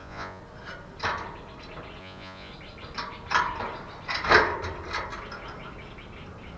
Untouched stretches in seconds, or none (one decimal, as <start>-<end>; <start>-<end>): 0.4-2.0; 2.5-6.6